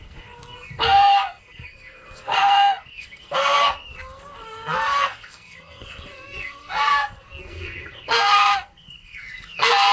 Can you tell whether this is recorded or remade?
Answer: remade